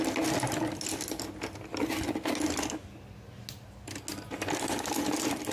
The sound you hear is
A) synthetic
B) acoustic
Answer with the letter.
B